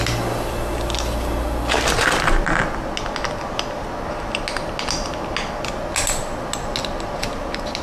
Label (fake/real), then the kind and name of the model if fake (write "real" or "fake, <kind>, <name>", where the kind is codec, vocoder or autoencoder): real